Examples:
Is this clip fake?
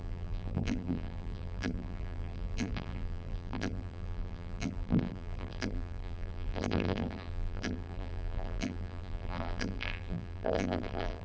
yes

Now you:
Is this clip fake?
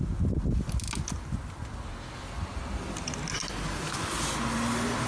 no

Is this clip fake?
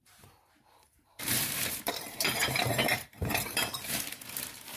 yes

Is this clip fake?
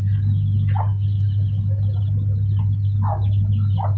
no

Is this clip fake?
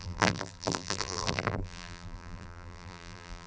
yes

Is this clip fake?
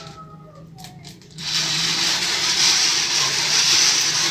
yes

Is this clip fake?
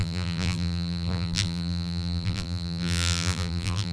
yes